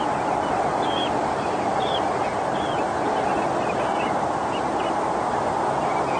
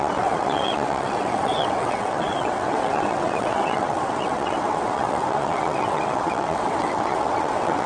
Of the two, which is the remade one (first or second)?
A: second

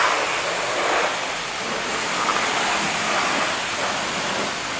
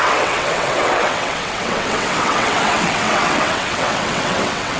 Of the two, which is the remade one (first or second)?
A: second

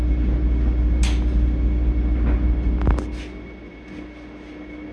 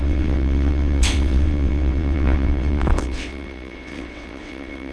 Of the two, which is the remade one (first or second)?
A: second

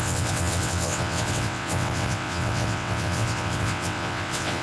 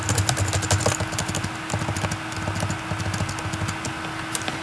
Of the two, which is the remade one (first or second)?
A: first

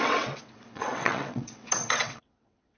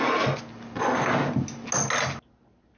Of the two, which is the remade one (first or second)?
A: first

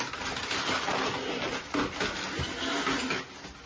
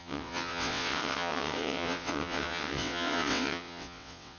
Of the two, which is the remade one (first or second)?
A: second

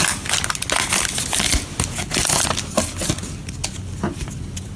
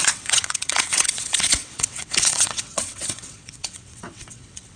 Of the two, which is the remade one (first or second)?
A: second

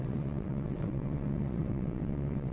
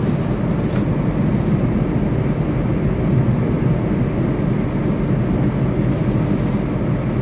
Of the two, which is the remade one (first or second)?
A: first